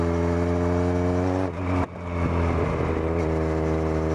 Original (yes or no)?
yes